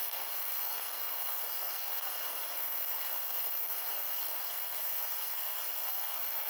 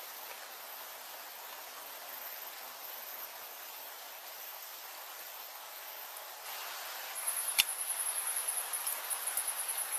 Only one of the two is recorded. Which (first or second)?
second